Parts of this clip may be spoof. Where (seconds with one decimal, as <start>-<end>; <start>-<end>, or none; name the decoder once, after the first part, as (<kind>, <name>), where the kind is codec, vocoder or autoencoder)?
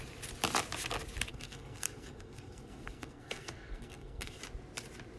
1.3-4.4 (codec, SNAC)